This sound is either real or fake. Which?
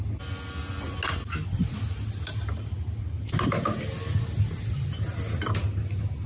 real